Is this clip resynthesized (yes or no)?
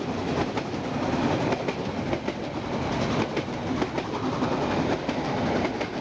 no